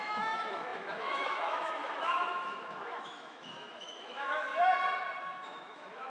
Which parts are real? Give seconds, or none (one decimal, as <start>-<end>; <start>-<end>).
4.5-5.2